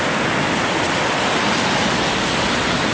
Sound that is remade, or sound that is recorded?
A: recorded